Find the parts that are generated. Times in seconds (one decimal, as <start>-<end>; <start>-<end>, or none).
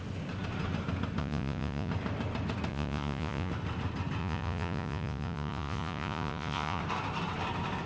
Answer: 1.2-1.9; 2.7-3.5; 4.2-6.8